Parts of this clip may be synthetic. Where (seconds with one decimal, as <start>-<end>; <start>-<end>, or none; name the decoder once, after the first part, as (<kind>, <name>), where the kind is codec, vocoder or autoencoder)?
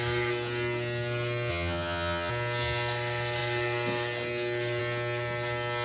1.5-2.3 (vocoder, HiFi-GAN)